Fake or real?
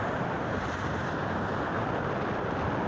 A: real